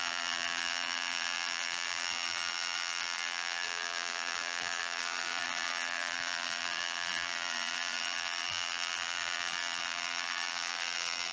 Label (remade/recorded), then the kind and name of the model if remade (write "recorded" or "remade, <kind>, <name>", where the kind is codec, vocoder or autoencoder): remade, vocoder, BigVGAN v2